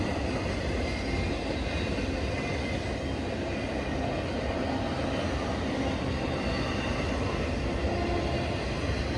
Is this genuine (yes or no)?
yes